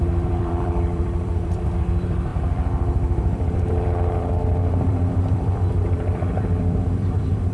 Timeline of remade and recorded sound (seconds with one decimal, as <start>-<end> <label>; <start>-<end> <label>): 0.0-7.5 remade